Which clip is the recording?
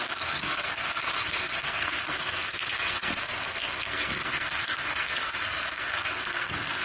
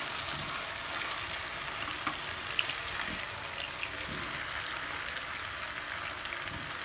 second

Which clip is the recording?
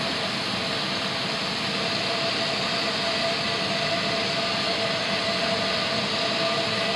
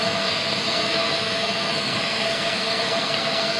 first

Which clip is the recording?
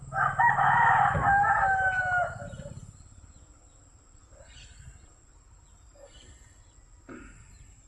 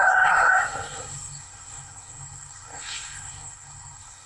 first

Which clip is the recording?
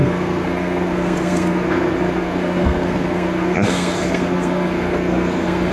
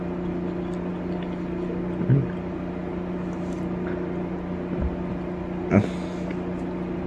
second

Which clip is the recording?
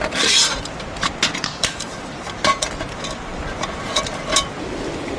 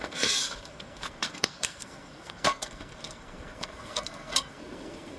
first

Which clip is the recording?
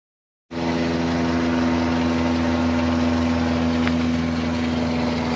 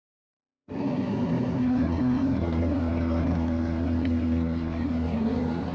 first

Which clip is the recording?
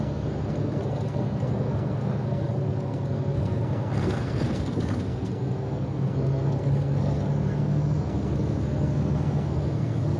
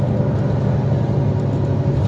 second